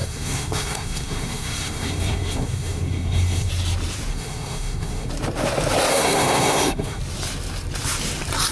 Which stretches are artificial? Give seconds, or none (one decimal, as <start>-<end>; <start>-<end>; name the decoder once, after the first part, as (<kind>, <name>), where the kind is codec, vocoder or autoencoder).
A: 0.0-3.5 (codec, SNAC); 4.1-5.1; 5.9-7.0